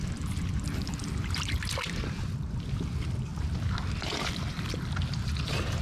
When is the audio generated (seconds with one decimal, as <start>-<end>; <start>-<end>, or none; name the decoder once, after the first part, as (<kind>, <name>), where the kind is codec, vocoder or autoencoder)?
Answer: none